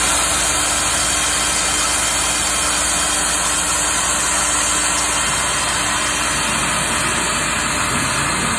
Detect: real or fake real